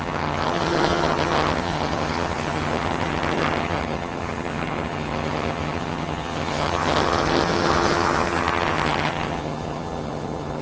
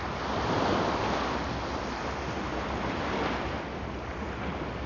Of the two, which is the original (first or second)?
second